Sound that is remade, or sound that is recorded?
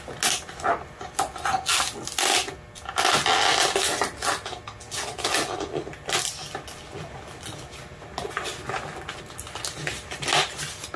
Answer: recorded